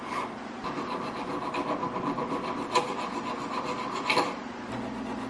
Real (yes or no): yes